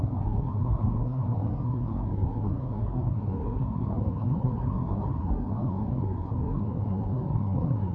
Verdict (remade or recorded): remade